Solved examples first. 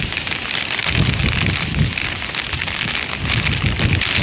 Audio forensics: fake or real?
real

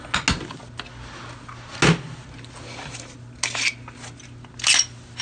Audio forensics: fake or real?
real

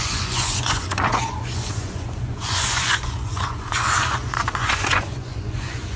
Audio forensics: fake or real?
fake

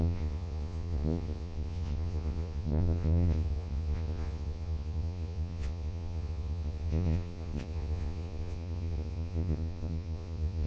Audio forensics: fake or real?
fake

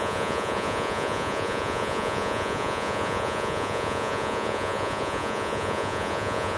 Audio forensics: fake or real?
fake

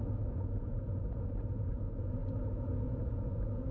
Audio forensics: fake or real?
fake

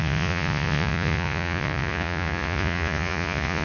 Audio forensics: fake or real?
fake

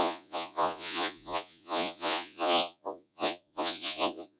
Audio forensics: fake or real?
fake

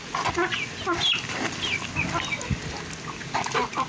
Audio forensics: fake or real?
real